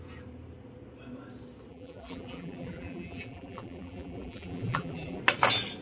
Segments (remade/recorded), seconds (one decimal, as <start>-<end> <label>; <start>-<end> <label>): 0.0-1.7 recorded; 1.7-5.2 remade; 5.2-5.8 recorded